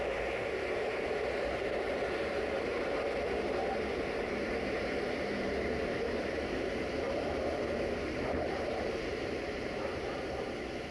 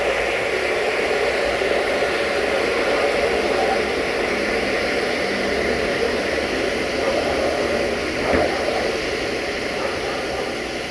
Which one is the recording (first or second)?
second